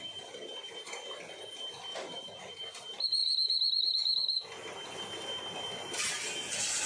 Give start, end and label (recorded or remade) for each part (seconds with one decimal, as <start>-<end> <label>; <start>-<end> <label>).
0.0-6.9 recorded